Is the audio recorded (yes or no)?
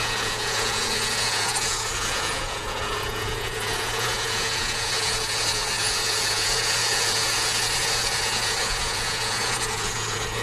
no